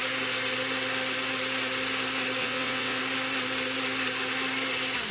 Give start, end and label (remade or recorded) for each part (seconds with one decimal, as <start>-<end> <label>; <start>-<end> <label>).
0.0-2.4 recorded; 2.4-3.0 remade; 3.0-5.1 recorded